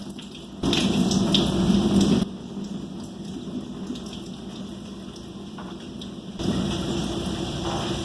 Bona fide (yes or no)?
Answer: yes